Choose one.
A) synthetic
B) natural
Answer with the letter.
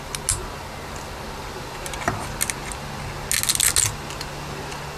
B